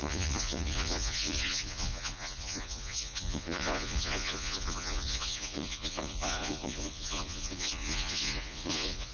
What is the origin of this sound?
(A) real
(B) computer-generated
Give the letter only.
B